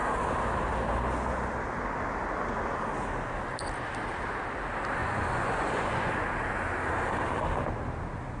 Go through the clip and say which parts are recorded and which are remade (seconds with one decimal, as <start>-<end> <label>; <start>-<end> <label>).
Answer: 0.0-5.0 recorded; 5.0-6.1 remade; 6.1-8.4 recorded